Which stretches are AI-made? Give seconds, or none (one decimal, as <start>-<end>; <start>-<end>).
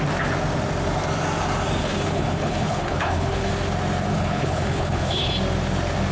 1.8-3.5; 4.1-5.3